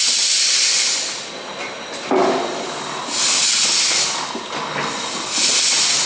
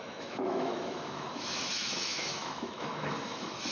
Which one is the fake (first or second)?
second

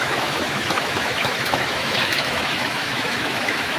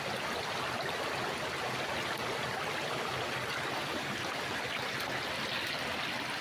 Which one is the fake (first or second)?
first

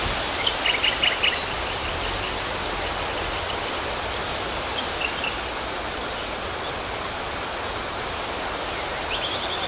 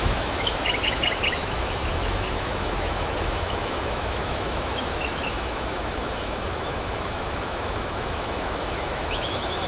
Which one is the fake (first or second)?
second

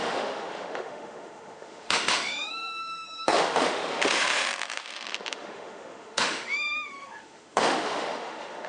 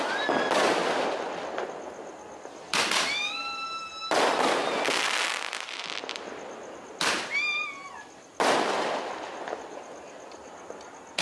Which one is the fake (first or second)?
first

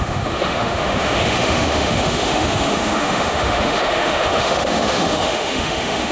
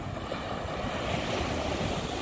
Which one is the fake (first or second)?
first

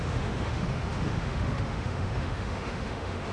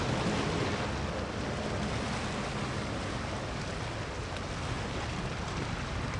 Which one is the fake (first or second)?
first